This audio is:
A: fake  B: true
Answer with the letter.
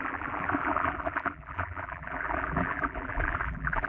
A